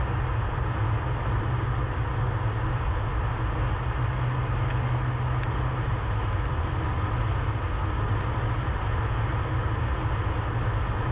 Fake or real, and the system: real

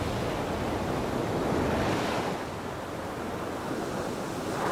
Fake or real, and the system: real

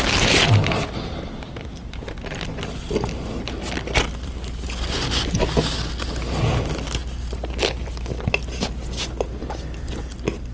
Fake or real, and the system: real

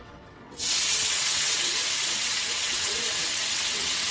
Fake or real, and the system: fake, vocoder, WaveNeXt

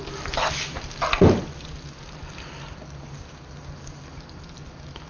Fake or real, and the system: real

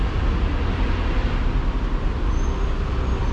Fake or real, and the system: real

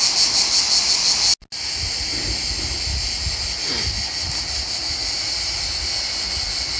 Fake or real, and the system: real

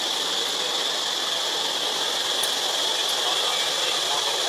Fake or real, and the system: real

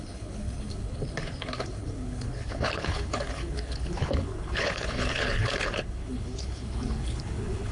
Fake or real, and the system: fake, codec, HILCodec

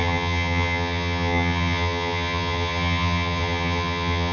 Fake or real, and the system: fake, vocoder, HiFi-GAN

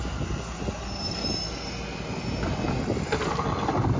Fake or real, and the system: real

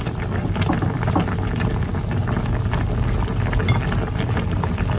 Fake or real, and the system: real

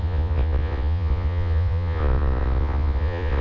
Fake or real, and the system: fake, vocoder, Vocos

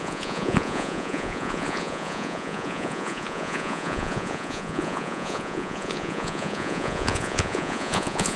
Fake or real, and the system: fake, vocoder, Vocos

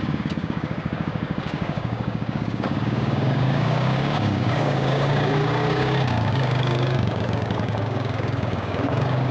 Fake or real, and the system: fake, codec, DAC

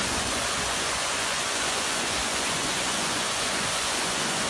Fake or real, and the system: fake, vocoder, Vocos